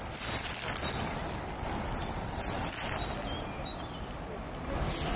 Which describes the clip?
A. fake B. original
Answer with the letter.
B